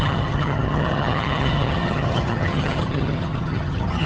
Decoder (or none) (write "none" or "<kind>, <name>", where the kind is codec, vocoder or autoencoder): vocoder, HiFi-GAN